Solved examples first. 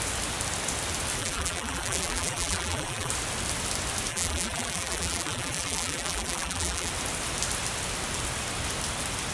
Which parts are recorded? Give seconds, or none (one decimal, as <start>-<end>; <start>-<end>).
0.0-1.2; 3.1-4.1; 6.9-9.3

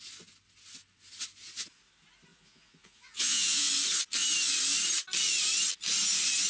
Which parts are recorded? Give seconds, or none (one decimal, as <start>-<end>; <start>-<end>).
0.0-2.3; 3.7-6.5

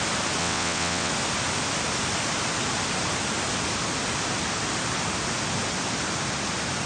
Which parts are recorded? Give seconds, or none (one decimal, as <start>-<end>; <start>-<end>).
0.0-0.4; 1.1-6.9

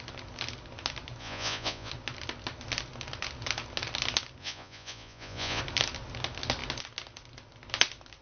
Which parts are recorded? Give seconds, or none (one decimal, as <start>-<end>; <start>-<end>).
0.0-1.2; 1.9-4.4; 5.6-8.2

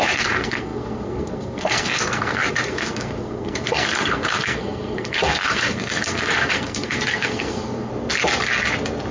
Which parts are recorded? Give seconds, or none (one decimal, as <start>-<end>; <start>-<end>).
7.9-9.1

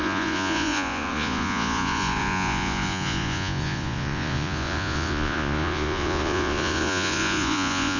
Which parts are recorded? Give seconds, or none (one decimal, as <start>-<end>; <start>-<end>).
none